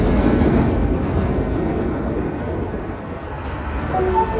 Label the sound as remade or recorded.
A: remade